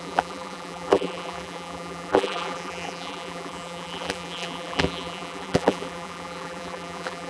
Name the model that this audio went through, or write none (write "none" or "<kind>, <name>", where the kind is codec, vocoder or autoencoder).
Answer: vocoder, BigVGAN v2